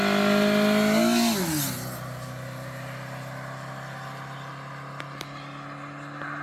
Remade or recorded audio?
recorded